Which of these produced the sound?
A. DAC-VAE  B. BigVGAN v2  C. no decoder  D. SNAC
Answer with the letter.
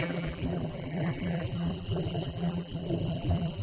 B